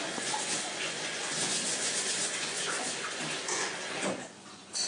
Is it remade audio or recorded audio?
remade